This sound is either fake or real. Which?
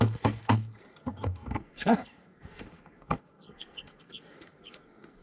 fake